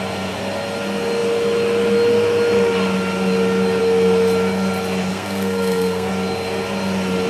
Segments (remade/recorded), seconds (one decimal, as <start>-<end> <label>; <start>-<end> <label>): 0.0-5.1 recorded; 5.1-6.1 remade; 6.1-7.3 recorded